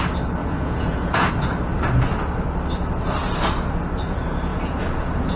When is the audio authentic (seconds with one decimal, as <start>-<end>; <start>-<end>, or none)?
0.0-0.4; 1.3-4.5

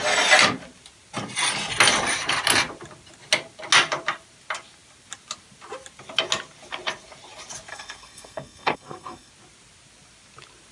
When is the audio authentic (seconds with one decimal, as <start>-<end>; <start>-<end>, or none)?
0.0-7.7; 9.3-10.7

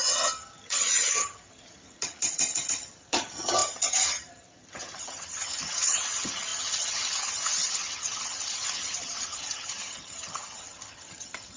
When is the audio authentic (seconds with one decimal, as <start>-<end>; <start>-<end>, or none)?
none

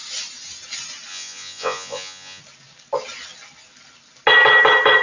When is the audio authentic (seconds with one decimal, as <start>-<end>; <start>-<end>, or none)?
0.0-1.1; 2.4-5.0

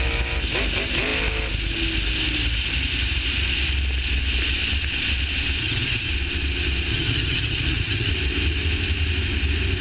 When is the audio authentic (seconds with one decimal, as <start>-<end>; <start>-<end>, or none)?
0.0-5.6; 6.1-6.9; 8.1-9.8

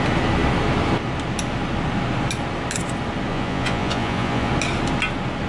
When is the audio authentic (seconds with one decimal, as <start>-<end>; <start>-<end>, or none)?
0.0-3.3; 4.5-5.5

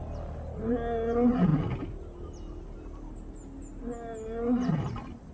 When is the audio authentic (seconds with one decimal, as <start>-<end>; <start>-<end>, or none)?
0.0-5.3